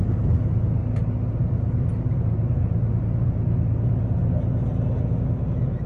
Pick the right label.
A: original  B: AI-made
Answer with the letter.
A